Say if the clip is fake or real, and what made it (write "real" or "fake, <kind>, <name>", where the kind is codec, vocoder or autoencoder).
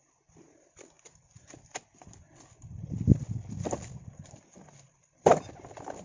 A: real